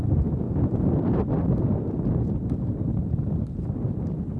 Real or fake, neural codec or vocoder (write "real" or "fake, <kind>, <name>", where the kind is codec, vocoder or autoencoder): real